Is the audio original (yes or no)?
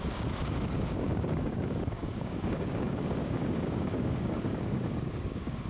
no